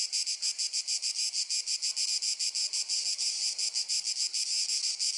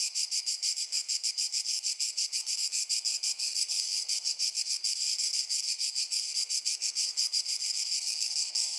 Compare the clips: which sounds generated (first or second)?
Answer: second